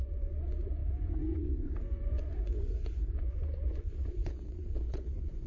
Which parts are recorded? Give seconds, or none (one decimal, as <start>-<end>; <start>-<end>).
none